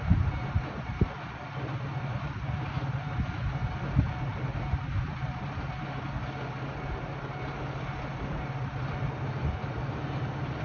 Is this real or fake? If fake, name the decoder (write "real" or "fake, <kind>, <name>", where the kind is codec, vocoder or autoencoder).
real